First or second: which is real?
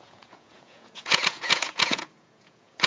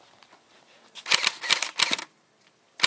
second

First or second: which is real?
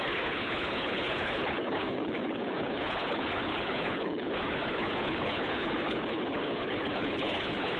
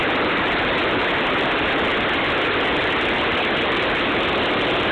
second